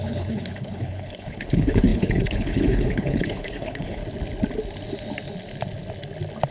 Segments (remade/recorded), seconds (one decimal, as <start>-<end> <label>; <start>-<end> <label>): 0.0-4.0 remade; 4.0-6.5 recorded